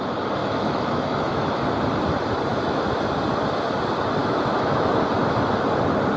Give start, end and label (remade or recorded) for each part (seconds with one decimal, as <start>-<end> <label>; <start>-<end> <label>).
0.0-0.4 recorded; 0.4-1.7 remade; 1.7-2.5 recorded; 2.5-3.0 remade; 3.0-4.2 recorded; 4.2-4.9 remade; 4.9-6.2 recorded